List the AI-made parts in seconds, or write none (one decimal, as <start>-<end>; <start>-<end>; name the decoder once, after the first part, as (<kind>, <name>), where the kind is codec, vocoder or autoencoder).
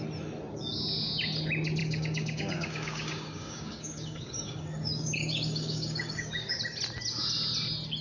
1.8-6.6 (codec, DAC)